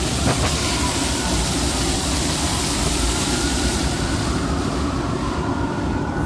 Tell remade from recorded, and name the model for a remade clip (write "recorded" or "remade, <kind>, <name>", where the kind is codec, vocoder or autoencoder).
remade, vocoder, BigVGAN v2